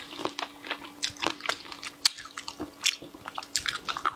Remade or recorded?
recorded